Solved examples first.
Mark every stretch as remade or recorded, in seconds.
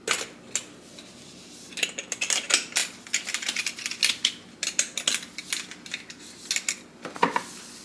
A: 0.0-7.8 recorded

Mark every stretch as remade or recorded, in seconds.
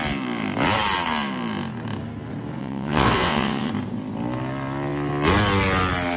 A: 0.0-2.6 recorded; 2.6-3.7 remade; 3.7-6.2 recorded